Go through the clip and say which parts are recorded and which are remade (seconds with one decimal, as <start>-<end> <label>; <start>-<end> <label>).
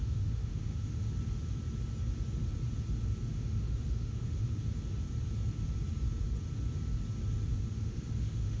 0.0-1.1 remade; 1.1-3.3 recorded; 3.3-4.6 remade; 4.6-7.8 recorded; 7.8-8.6 remade